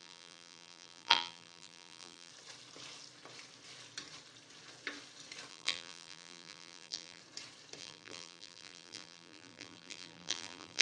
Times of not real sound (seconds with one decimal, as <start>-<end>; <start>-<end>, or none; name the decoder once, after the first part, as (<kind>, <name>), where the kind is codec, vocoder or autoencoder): 0.0-2.3 (vocoder, BigVGAN v2); 5.5-7.2; 7.8-10.8